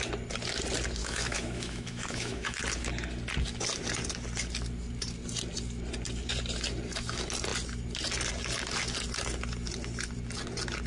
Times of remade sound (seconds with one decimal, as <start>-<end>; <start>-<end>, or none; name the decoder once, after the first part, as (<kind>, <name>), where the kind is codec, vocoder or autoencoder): 1.0-2.6 (autoencoder, DAC-VAE)